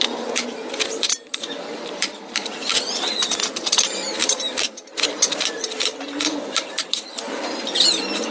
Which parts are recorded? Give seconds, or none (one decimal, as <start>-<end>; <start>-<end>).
2.7-3.5